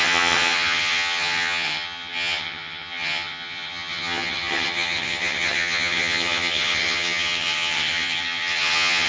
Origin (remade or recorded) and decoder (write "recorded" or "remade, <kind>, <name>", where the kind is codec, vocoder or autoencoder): remade, vocoder, HiFi-GAN